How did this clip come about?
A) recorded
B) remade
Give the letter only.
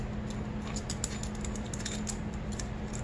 A